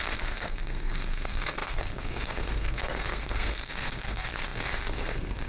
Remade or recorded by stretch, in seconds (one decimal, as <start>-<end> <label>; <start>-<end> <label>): 0.0-5.5 remade